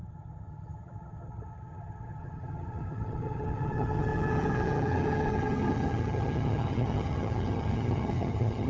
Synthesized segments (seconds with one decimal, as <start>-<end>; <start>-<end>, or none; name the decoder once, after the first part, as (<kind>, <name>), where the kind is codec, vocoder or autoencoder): 0.0-8.7 (vocoder, HiFi-GAN)